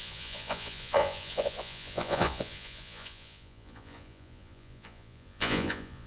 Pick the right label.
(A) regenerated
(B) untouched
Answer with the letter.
A